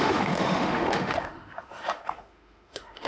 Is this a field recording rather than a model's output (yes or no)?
no